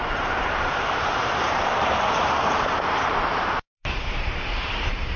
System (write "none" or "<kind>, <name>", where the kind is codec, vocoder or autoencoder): vocoder, BigVGAN v2